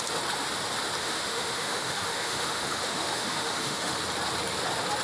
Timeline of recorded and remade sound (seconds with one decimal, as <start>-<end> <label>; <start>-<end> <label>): 0.0-1.0 recorded; 1.0-4.0 remade; 4.0-5.0 recorded